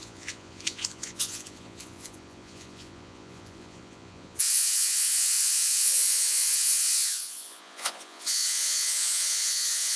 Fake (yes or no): yes